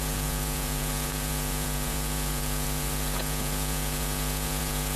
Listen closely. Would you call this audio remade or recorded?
remade